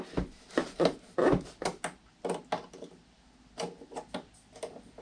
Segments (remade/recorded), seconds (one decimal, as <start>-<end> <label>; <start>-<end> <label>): 0.0-5.0 recorded